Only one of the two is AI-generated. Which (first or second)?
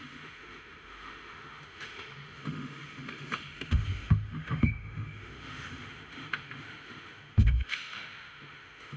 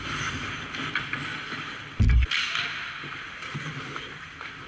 first